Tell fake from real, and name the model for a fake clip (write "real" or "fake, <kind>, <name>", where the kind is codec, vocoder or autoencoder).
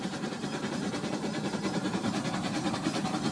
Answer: fake, vocoder, BigVGAN v2